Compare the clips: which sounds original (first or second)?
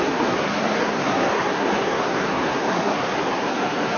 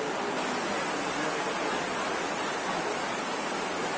second